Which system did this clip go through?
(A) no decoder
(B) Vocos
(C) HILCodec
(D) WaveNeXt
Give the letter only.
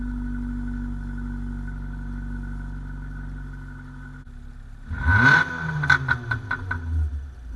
A